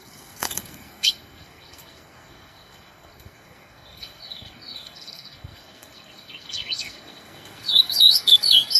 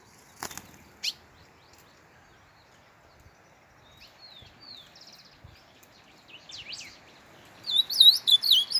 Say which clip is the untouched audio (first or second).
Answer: second